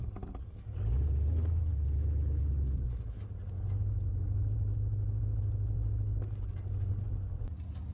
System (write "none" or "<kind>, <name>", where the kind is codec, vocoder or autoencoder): none